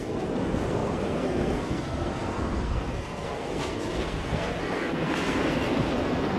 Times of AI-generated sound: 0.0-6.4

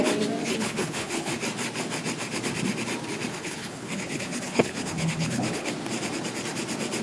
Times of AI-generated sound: 0.4-1.3; 3.3-5.7

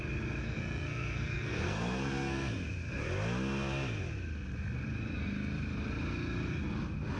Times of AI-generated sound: 0.4-2.5

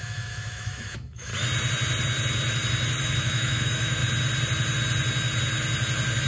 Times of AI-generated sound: 0.0-1.3; 3.0-4.0